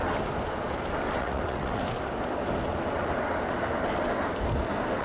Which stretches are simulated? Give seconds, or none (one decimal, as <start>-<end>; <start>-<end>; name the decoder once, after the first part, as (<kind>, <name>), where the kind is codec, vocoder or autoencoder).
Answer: 1.2-1.8 (vocoder, WaveNeXt)